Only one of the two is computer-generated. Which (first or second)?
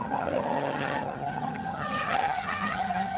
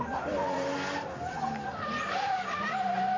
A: first